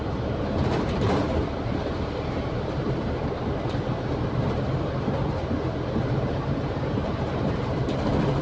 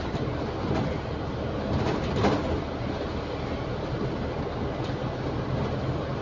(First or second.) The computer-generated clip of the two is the first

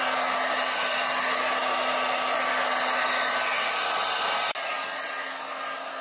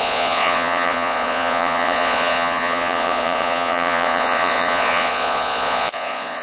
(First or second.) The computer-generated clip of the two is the second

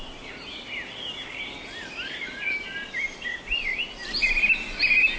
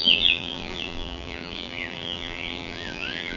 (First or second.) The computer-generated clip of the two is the second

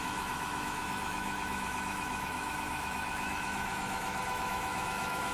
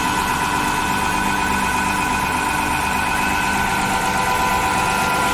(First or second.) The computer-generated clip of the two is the first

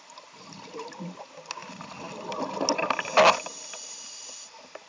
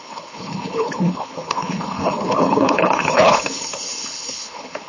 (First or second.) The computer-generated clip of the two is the second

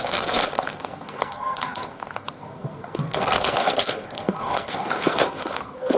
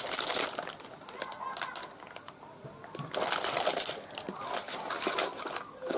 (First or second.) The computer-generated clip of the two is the first